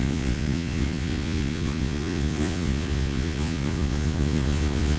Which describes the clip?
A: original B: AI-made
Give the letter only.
B